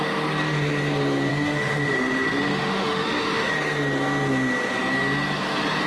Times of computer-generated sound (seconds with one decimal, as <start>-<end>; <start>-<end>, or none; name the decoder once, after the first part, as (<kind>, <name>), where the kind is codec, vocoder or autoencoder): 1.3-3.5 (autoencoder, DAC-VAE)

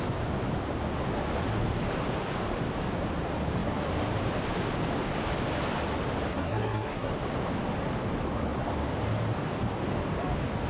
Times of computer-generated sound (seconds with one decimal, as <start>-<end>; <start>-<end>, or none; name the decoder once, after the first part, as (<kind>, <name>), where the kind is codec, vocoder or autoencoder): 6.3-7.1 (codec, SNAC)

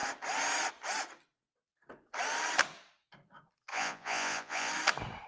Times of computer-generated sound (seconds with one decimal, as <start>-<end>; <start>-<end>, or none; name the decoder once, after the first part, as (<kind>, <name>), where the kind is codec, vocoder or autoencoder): 3.7-4.7 (vocoder, Vocos)

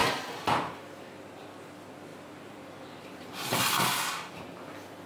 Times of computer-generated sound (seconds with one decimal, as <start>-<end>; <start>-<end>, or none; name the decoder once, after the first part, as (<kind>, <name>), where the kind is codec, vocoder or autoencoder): 2.1-3.5 (vocoder, BigVGAN v2)